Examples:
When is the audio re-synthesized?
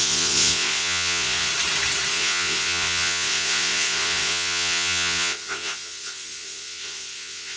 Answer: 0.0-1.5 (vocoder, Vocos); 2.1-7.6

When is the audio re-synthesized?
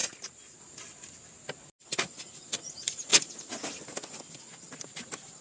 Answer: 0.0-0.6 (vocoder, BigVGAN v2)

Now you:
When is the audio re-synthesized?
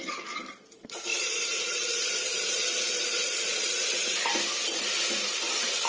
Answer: 1.1-4.2 (vocoder, BigVGAN v2)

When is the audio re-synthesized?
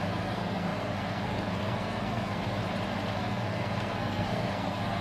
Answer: 0.0-2.6 (codec, SNAC); 3.2-5.0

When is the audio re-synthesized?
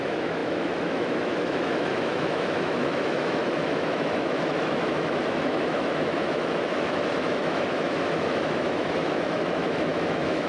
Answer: 0.0-10.5 (autoencoder, DAC-VAE)